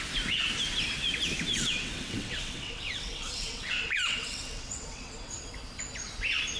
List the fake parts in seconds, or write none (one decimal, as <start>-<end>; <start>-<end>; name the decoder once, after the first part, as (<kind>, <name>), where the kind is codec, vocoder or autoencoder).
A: 1.5-5.5 (vocoder, WaveNeXt)